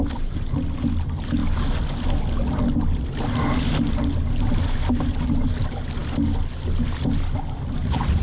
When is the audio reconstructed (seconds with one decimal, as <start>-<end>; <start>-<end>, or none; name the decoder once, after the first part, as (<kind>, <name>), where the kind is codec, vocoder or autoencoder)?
none